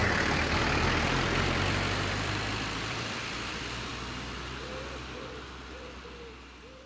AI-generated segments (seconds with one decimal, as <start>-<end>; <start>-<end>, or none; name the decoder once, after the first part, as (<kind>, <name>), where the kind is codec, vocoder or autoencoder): 0.0-3.9 (vocoder, BigVGAN v2)

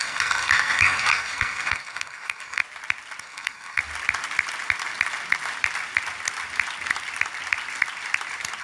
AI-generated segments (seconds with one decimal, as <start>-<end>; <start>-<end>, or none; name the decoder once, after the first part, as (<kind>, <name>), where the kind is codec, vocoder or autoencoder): 0.0-2.6 (codec, SNAC); 3.2-3.8

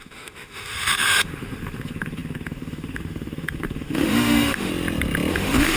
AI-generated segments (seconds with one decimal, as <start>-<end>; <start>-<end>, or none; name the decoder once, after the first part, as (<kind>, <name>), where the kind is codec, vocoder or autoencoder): 0.0-4.7 (autoencoder, DAC-VAE); 5.3-5.8

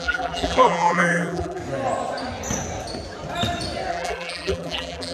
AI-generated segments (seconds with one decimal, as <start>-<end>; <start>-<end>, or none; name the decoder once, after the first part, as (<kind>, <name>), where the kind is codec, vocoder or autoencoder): 0.0-1.6 (vocoder, BigVGAN v2); 3.9-5.1

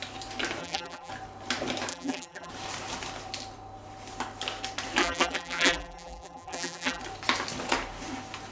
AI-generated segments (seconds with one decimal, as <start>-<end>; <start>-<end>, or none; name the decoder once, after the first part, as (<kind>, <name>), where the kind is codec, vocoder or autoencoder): 0.6-1.1 (vocoder, BigVGAN v2); 1.9-2.5; 5.0-7.0

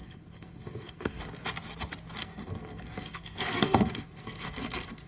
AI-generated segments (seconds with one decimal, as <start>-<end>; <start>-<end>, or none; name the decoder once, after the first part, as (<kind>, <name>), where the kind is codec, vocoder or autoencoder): 0.0-1.2 (codec, SNAC); 2.2-5.1

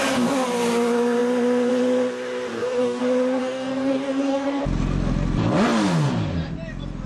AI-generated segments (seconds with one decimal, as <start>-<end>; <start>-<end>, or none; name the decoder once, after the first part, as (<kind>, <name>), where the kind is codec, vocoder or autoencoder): 2.5-3.0 (codec, DAC); 3.4-4.6